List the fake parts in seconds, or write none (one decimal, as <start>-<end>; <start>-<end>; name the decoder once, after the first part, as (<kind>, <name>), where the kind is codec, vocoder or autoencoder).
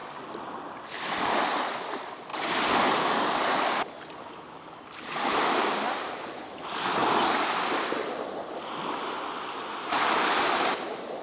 7.0-11.2 (vocoder, BigVGAN v2)